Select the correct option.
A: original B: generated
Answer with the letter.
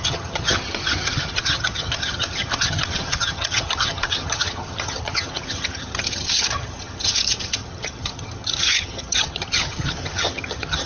B